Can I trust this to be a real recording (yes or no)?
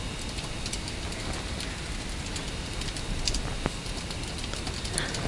yes